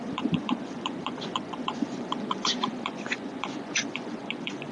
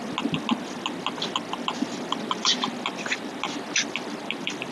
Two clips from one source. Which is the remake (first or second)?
first